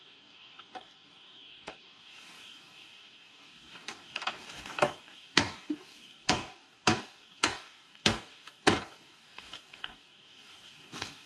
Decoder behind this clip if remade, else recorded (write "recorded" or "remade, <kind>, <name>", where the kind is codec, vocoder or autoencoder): remade, codec, DAC